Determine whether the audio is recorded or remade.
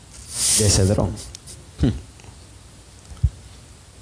recorded